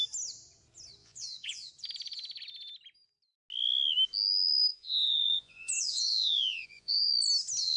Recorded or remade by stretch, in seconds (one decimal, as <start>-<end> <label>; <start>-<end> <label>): 0.0-1.0 recorded; 1.0-1.7 remade; 1.7-4.7 recorded; 4.7-7.1 remade; 7.1-7.8 recorded